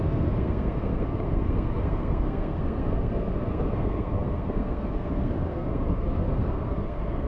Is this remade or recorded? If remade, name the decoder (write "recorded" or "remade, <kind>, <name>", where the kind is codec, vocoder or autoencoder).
remade, codec, SNAC